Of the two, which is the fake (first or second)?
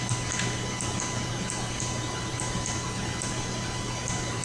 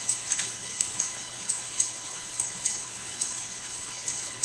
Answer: second